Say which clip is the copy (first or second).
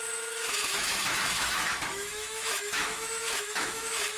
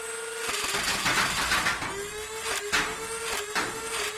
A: first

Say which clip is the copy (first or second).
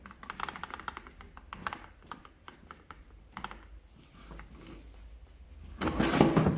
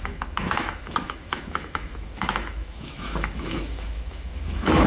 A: second